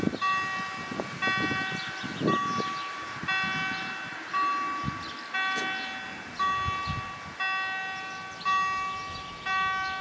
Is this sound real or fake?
real